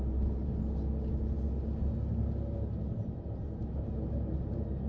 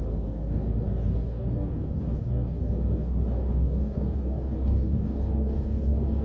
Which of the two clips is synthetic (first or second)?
second